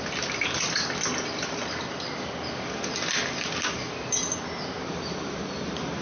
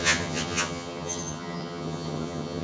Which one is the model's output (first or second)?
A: second